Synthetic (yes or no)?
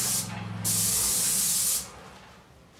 no